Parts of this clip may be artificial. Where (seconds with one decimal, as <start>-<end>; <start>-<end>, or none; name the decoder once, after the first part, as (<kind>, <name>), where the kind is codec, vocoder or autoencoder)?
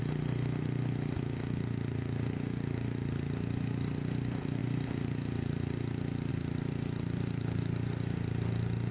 none